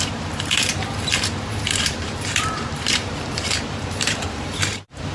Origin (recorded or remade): remade